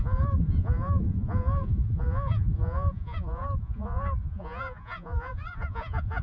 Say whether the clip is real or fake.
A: fake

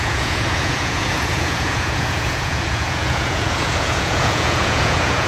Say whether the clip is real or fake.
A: fake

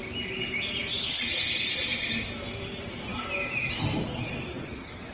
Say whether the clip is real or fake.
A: real